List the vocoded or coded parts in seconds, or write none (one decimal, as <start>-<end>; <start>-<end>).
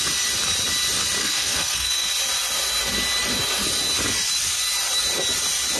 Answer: 1.2-2.1